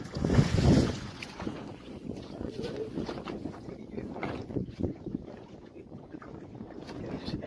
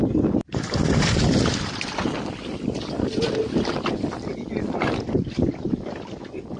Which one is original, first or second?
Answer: second